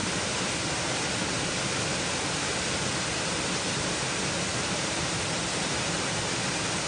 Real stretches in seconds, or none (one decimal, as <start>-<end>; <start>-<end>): 0.0-4.5; 5.1-6.9